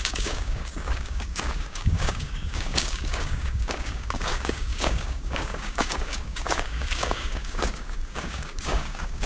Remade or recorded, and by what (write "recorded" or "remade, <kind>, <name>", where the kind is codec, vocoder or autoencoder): remade, codec, DAC